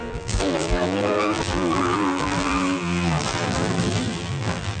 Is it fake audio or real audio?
fake